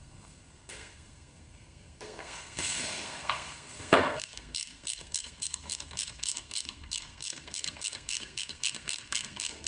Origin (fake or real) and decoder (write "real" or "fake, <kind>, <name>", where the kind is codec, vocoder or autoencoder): fake, codec, SNAC